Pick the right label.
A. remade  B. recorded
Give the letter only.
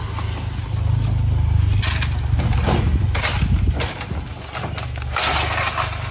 B